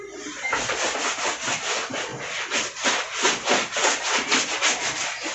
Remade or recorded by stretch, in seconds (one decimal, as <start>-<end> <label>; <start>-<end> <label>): 0.0-5.3 recorded

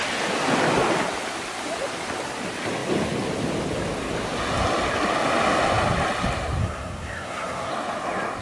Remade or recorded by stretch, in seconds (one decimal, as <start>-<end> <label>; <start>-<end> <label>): 0.0-6.6 recorded; 6.6-7.7 remade; 7.7-8.4 recorded

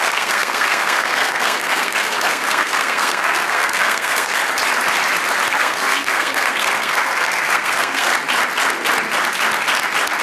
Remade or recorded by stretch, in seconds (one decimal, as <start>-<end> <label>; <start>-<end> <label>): 0.0-4.4 remade; 4.4-5.5 recorded; 5.5-8.1 remade; 8.1-10.2 recorded

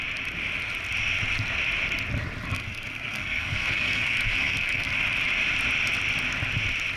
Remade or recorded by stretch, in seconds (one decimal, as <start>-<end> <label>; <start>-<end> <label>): 0.0-2.5 recorded; 2.5-4.9 remade; 4.9-7.0 recorded

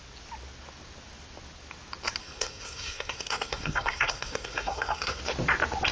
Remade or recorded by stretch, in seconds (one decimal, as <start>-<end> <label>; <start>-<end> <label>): 0.0-2.2 recorded; 2.2-5.2 remade; 5.2-5.9 recorded

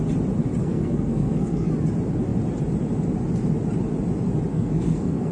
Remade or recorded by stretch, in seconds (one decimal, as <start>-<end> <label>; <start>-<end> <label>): 0.0-0.6 recorded; 0.6-1.7 remade; 1.7-4.5 recorded; 4.5-5.3 remade